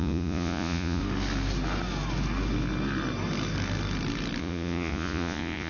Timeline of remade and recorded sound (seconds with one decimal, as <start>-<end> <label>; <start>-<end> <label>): 0.0-1.0 remade; 1.0-4.4 recorded; 4.4-5.7 remade